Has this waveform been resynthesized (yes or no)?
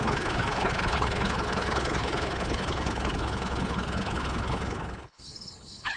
yes